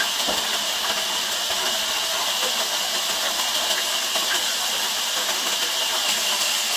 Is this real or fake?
real